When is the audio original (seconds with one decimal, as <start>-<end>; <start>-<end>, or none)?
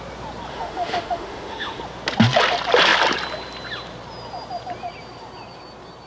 0.0-0.5; 1.8-6.1